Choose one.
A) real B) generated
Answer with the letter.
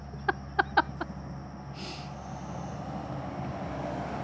A